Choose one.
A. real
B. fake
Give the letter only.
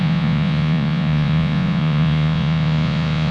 B